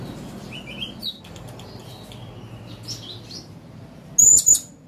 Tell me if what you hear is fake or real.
real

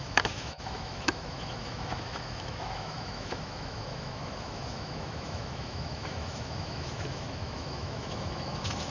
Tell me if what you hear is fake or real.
fake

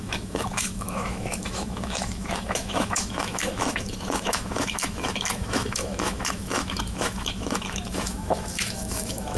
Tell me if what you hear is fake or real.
fake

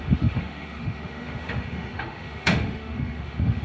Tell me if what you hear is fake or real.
fake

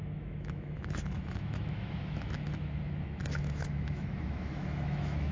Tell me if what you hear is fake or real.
fake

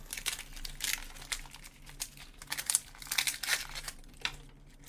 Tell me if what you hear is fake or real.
real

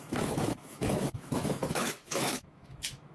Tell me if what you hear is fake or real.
fake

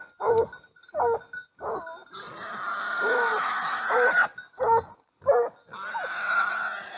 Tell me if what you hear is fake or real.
real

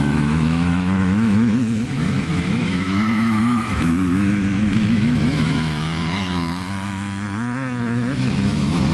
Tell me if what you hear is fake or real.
fake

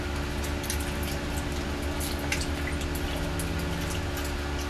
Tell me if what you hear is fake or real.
real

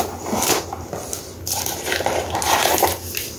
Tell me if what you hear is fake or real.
real